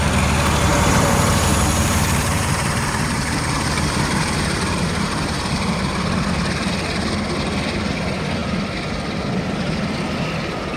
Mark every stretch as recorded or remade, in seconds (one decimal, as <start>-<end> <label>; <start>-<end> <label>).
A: 0.0-0.7 recorded; 0.7-5.9 remade; 5.9-10.8 recorded